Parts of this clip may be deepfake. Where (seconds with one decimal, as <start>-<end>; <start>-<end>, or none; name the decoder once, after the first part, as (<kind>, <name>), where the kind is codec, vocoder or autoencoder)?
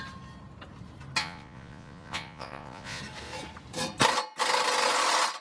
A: 1.2-3.0 (vocoder, Vocos)